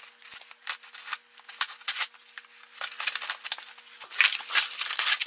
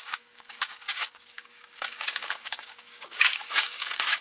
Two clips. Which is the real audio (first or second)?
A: first